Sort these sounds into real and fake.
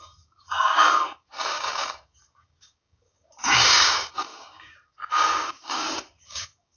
fake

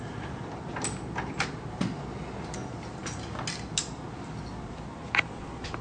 real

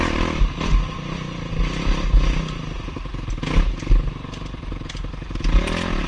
real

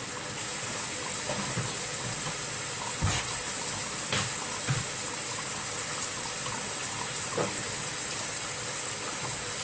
real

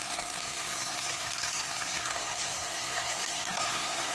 fake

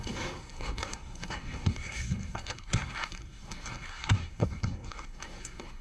fake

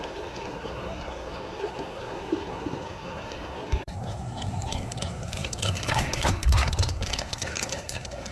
fake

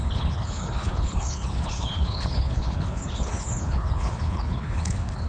fake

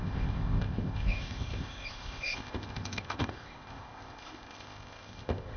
fake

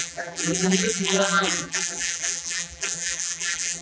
fake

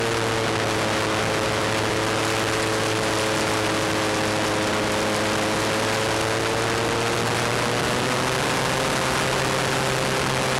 real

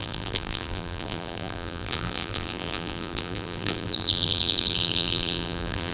fake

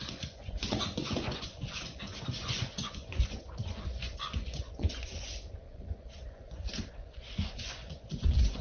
fake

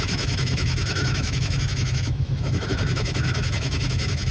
fake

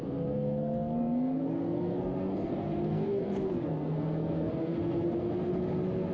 fake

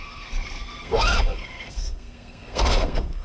fake